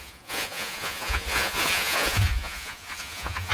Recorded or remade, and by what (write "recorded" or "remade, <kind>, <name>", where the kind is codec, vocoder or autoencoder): remade, vocoder, Vocos